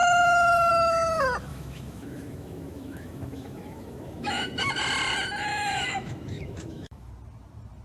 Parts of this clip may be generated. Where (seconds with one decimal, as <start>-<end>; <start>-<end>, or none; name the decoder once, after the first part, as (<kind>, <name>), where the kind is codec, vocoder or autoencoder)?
0.0-0.7 (autoencoder, DAC-VAE); 1.5-4.7; 5.5-7.1